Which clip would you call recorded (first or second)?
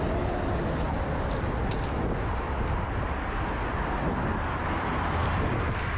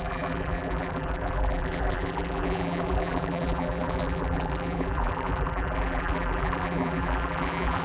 first